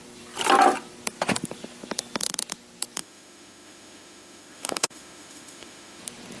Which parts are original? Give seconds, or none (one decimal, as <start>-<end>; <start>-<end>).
0.0-3.0; 6.0-6.4